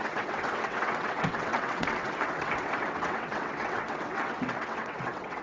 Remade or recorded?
remade